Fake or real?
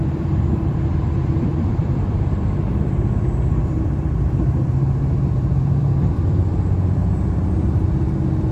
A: fake